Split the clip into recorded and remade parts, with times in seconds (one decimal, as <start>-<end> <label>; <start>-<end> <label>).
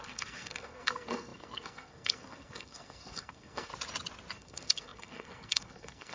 0.0-3.7 remade; 3.7-4.3 recorded; 4.3-6.1 remade